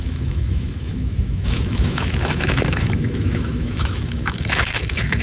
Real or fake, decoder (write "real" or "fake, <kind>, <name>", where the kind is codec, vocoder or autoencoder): fake, autoencoder, DAC-VAE